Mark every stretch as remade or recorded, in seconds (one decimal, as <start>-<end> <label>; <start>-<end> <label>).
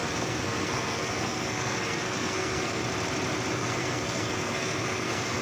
0.0-2.8 remade; 2.8-3.5 recorded; 3.5-5.4 remade